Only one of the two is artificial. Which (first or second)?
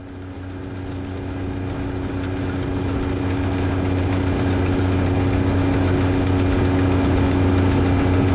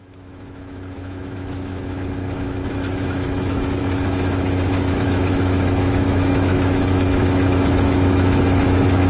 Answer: second